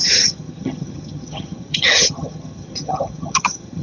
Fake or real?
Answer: fake